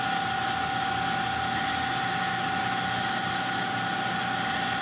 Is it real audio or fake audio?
real